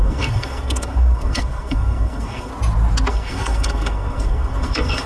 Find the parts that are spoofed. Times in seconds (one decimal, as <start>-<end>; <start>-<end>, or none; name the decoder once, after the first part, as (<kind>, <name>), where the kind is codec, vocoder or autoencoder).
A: 0.0-2.5 (codec, SNAC); 3.1-5.1